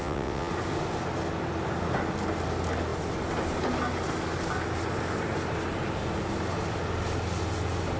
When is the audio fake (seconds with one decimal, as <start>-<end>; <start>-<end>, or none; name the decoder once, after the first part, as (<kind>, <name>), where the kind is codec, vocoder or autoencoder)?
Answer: 0.0-0.5 (vocoder, WaveNeXt)